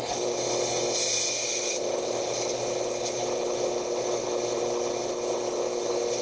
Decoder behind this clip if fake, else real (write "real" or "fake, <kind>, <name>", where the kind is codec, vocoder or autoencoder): real